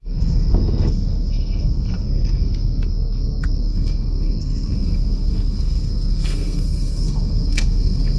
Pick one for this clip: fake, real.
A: fake